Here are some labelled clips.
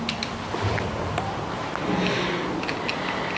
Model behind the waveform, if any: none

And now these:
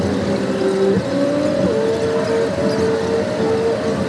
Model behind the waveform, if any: none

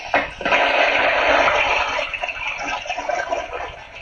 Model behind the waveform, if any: none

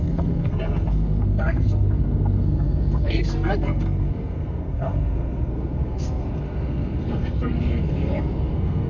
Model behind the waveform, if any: codec, SNAC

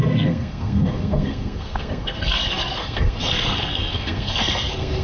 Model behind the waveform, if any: codec, SNAC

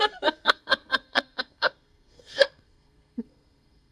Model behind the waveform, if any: codec, SNAC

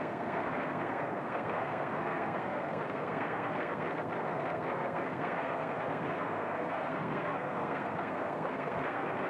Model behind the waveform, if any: codec, SNAC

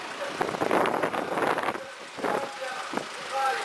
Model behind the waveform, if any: none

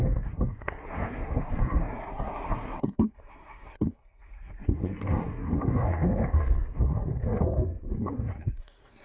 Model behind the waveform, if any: codec, SNAC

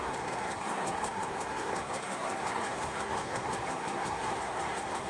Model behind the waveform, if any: codec, SNAC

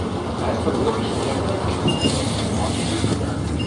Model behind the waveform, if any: none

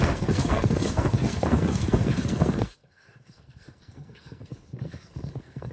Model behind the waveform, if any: codec, SNAC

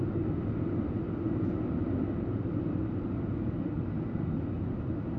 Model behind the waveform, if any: none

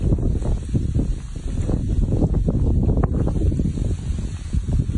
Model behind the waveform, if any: none